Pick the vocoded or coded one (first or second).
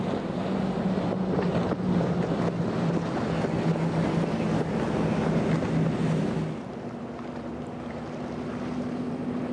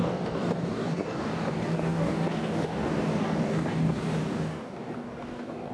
second